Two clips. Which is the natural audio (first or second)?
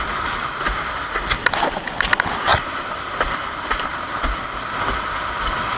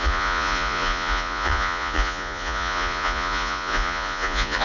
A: first